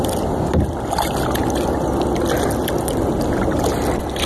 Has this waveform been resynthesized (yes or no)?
no